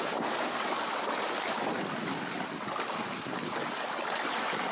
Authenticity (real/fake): real